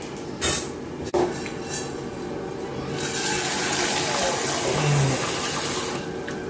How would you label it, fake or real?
real